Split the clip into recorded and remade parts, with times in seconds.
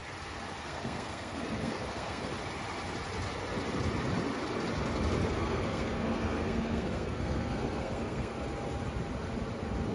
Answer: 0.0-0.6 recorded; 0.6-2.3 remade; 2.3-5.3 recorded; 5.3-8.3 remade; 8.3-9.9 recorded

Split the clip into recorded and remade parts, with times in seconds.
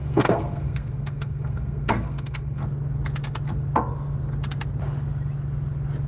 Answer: 0.0-2.6 remade; 2.6-6.1 recorded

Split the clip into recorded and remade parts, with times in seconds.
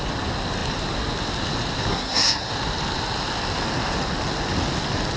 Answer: 0.0-1.9 recorded; 1.9-2.5 remade; 2.5-5.2 recorded